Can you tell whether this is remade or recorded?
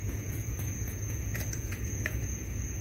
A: remade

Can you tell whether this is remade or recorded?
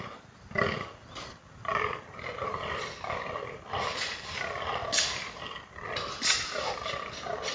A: recorded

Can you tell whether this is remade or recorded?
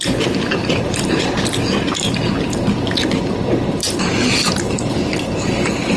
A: remade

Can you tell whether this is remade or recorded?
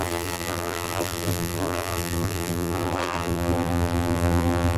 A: remade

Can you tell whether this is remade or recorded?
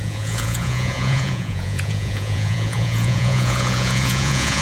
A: remade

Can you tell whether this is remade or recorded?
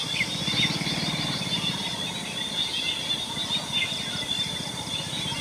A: recorded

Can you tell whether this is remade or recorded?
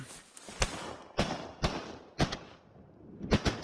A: recorded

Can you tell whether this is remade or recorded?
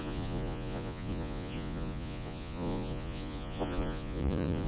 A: remade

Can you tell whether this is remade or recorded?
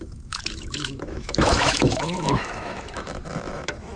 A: remade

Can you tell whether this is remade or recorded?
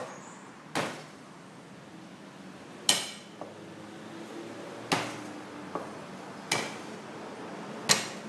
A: recorded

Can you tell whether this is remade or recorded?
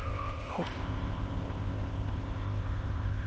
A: remade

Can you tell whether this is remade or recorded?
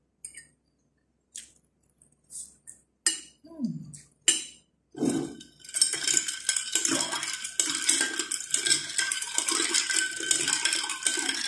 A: recorded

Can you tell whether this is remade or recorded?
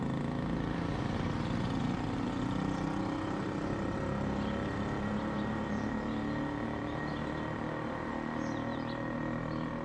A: recorded